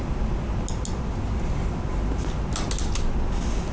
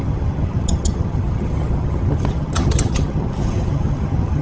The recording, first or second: first